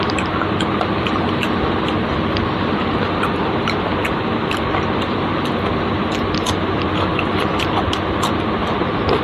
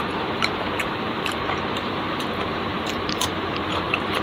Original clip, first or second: first